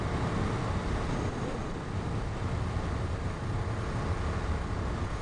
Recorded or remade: recorded